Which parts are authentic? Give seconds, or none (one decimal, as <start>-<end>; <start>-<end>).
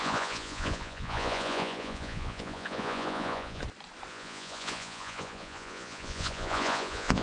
3.6-4.1